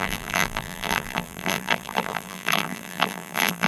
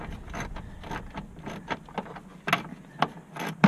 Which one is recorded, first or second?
second